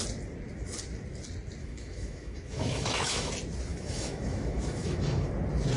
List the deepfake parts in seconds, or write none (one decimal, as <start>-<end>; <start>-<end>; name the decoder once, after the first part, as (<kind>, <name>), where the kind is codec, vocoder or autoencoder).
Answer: 1.6-3.3 (autoencoder, DAC-VAE); 3.7-5.3